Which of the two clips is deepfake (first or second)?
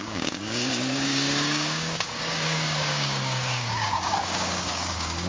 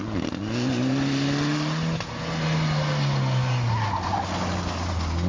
first